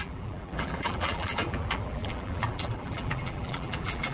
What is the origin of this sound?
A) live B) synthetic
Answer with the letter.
B